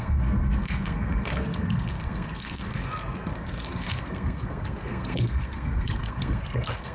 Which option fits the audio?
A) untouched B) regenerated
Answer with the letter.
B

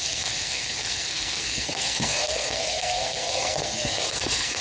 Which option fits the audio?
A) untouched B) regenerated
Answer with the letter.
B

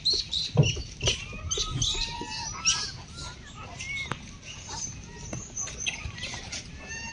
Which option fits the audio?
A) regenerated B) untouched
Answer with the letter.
B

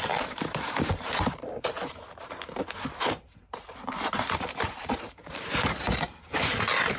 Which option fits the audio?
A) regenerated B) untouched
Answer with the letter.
A